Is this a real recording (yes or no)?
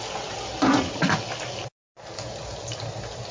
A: yes